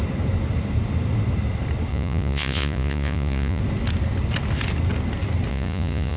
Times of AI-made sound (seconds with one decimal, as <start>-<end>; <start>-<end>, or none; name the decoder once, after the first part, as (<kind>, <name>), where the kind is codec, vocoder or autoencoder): 1.9-3.6 (vocoder, Vocos); 5.5-6.2